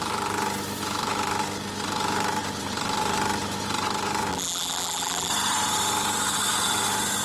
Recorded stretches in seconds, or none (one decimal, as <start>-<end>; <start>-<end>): 0.0-4.3; 5.3-7.2